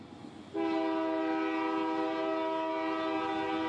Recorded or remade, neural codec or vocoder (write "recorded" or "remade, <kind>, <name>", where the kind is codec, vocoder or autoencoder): recorded